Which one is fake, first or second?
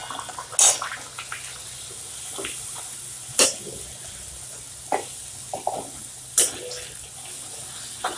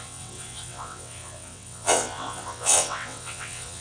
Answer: second